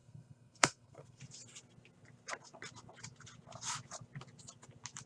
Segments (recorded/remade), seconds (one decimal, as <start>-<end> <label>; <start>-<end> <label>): 0.0-1.2 remade; 1.2-5.1 recorded